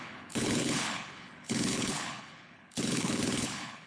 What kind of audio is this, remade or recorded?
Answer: remade